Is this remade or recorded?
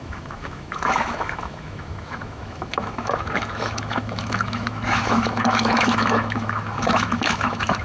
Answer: remade